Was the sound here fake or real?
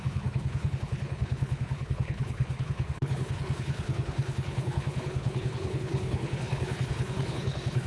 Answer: fake